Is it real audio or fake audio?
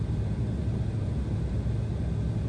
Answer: real